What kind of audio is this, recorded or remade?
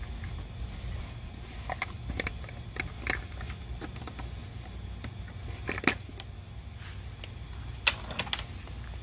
recorded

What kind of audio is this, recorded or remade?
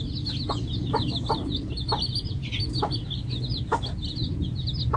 recorded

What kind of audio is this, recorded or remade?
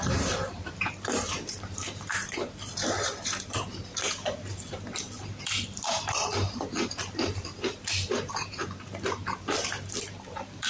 remade